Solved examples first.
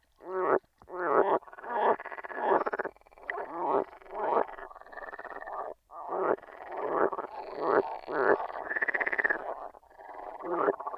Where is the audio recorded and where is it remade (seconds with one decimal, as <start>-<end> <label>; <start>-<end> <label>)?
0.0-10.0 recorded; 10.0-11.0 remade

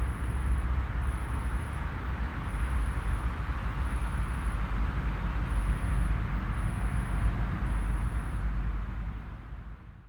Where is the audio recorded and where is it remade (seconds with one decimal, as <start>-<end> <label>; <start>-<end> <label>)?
0.0-10.1 recorded

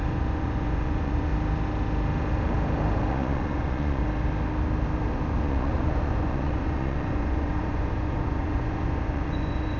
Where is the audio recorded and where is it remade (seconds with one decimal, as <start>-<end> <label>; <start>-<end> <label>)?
0.0-1.3 remade; 1.3-3.1 recorded; 3.1-4.0 remade; 4.0-5.1 recorded; 5.1-9.8 remade

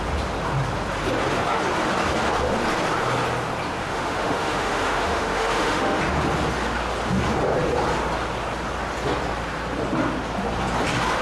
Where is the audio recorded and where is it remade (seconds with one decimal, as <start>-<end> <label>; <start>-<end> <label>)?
0.0-3.8 recorded; 3.8-6.0 remade; 6.0-11.2 recorded

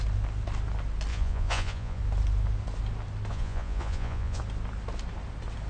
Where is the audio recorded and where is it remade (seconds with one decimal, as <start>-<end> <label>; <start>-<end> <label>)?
0.0-1.1 recorded; 1.1-2.0 remade; 2.0-3.3 recorded; 3.3-4.4 remade; 4.4-5.7 recorded

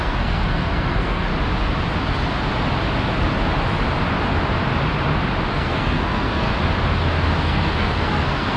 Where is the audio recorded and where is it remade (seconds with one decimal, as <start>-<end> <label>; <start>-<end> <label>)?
0.0-1.3 remade; 1.3-5.5 recorded; 5.5-6.5 remade; 6.5-7.4 recorded; 7.4-8.6 remade

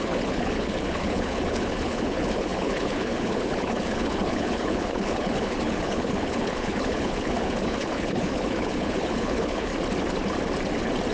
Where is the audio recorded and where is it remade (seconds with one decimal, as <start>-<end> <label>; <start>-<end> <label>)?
0.0-9.7 remade; 9.7-11.1 recorded